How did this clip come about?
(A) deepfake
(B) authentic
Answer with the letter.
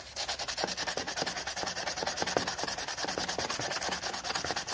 B